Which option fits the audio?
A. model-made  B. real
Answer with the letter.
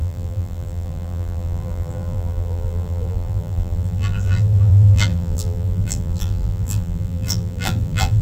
A